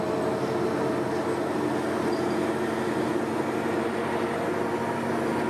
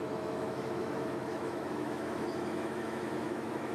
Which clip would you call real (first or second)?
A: first